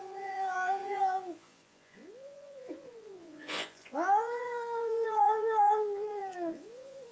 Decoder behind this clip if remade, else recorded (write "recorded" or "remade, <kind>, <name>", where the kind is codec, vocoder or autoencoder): remade, vocoder, Vocos